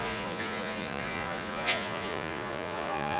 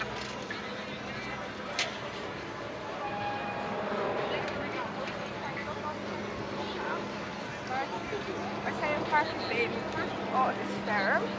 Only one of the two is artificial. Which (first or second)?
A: first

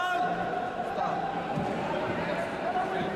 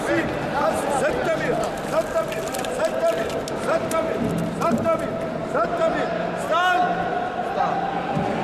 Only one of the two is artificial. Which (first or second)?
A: first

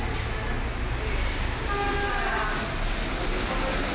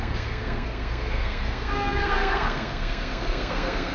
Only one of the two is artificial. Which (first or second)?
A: second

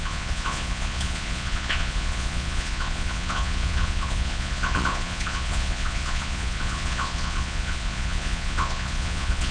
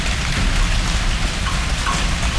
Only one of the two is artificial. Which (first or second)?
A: first